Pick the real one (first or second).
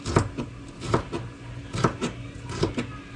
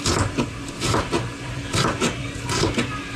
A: first